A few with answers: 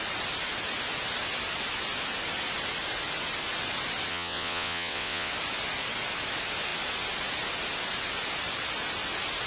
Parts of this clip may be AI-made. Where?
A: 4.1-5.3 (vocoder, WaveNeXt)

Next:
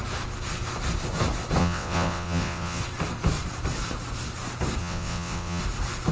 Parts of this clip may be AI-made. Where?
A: 1.6-2.8 (vocoder, WaveNeXt); 4.8-5.6

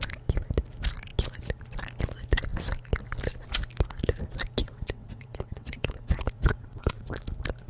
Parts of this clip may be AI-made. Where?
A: 4.6-7.1 (vocoder, WaveNeXt)

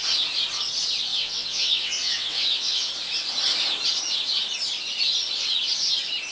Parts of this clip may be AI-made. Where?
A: 1.1-2.9 (vocoder, WaveNeXt)

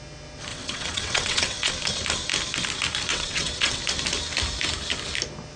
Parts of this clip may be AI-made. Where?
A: 0.5-1.7 (vocoder, WaveNeXt); 3.1-3.8